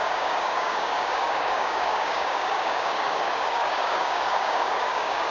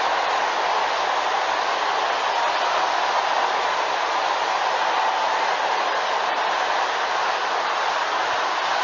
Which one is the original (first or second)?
second